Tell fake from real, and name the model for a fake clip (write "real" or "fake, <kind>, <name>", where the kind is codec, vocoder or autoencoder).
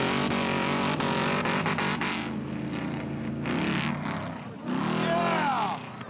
real